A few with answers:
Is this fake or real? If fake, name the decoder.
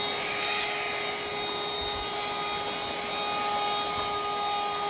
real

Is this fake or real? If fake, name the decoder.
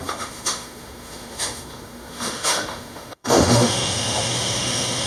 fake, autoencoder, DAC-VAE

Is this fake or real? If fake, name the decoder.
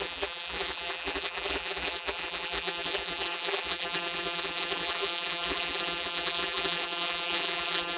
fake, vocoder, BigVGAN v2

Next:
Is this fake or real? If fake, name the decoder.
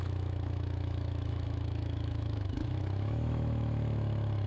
fake, autoencoder, DAC-VAE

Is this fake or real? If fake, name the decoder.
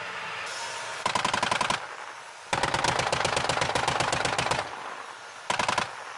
real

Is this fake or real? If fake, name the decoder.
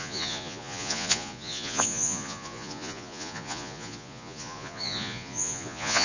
fake, vocoder, Vocos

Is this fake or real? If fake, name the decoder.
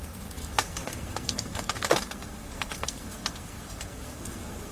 fake, codec, SNAC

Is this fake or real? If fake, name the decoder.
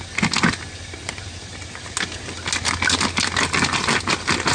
real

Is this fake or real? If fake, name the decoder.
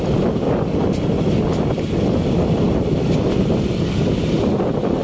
fake, vocoder, BigVGAN v2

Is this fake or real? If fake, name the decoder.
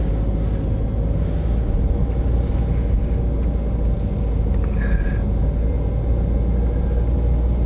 real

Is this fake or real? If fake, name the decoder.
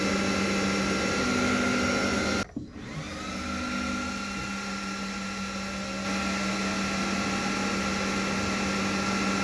real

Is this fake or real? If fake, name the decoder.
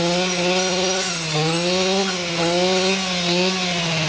real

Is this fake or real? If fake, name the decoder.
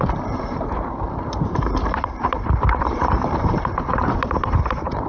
fake, vocoder, BigVGAN v2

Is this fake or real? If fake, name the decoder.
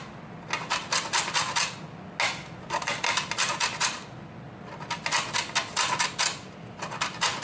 real